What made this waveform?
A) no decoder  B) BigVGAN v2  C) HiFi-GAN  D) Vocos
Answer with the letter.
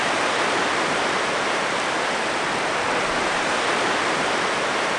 A